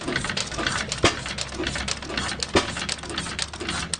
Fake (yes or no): no